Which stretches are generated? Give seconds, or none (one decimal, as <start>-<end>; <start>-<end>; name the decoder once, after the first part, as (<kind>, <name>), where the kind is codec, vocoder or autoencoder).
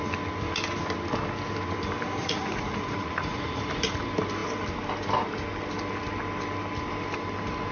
2.2-3.6 (vocoder, Vocos)